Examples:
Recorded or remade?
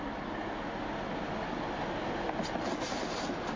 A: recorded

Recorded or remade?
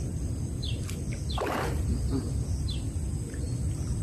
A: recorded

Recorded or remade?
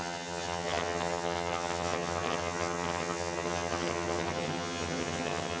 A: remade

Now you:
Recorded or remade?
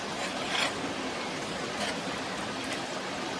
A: recorded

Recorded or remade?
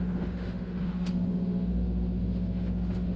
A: remade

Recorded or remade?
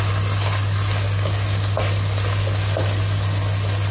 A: recorded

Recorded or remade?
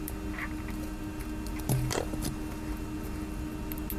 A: recorded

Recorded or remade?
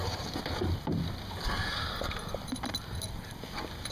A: recorded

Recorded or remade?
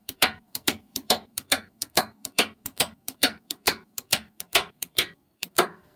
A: remade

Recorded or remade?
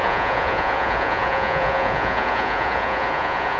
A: remade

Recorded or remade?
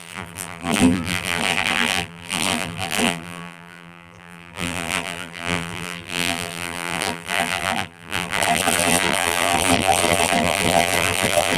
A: remade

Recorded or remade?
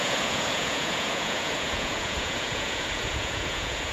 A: remade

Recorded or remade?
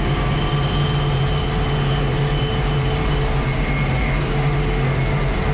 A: recorded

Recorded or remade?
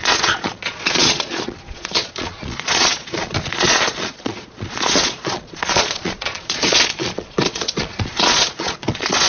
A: remade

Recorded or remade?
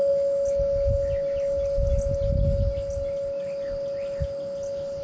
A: recorded